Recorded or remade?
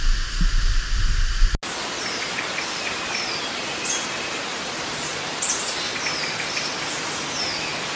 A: recorded